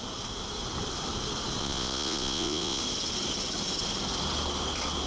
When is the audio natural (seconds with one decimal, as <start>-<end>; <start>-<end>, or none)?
0.0-1.6; 2.8-5.1